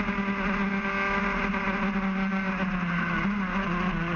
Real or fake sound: real